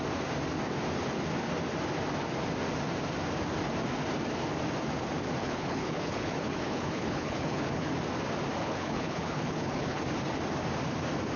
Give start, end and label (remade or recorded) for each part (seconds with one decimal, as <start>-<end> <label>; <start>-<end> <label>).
0.0-5.4 recorded; 5.4-7.9 remade; 7.9-8.6 recorded; 8.6-10.0 remade; 10.0-11.4 recorded